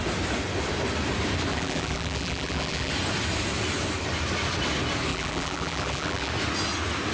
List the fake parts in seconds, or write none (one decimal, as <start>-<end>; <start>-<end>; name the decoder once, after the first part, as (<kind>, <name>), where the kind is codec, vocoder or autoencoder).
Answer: 1.5-2.9 (vocoder, BigVGAN v2); 5.1-6.3